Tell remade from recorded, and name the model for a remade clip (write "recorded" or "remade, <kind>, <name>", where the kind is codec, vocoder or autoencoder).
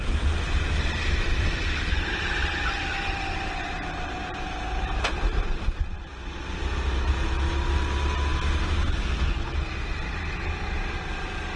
recorded